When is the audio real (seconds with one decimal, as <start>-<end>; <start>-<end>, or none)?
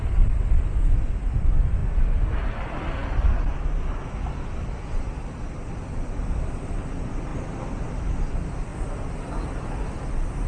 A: 0.0-10.5